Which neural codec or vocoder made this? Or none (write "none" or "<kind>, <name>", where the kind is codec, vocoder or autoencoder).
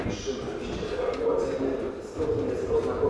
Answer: none